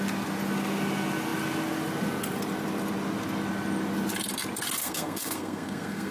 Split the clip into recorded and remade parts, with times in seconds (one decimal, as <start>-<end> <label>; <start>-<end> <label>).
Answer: 0.0-4.8 recorded; 4.8-6.1 remade